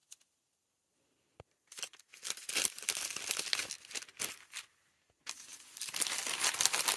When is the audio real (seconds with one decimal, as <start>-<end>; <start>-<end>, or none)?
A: 0.0-7.0